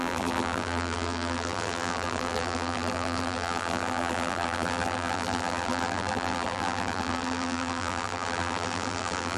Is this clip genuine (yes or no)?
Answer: no